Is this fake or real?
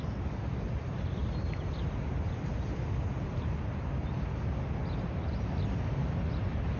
real